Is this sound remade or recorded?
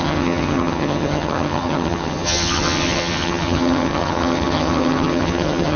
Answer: remade